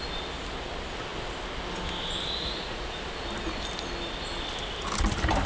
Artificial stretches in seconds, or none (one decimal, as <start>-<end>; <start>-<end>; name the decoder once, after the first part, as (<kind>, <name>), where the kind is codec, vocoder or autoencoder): 2.4-3.0 (vocoder, Vocos)

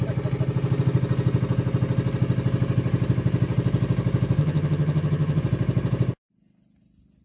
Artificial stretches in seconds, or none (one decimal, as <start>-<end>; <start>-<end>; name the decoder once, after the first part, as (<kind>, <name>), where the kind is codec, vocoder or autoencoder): 4.4-5.4 (vocoder, HiFi-GAN)

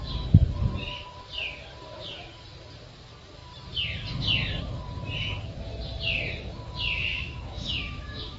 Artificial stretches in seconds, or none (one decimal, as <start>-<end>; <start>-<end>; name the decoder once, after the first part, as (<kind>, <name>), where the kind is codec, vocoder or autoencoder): 7.1-8.4 (autoencoder, DAC-VAE)

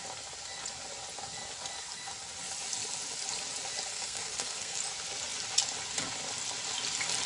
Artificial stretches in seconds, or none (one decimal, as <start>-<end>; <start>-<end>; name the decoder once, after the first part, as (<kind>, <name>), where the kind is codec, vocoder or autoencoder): 3.9-4.8 (codec, SNAC)

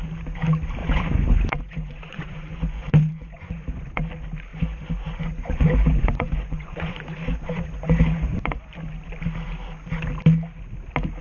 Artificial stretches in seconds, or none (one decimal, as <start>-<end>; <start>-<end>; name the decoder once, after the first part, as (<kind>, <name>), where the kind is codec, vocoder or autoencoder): 0.8-4.1 (vocoder, Vocos); 4.5-8.6